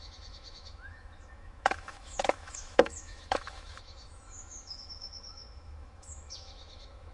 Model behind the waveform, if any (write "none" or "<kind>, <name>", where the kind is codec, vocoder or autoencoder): autoencoder, DAC-VAE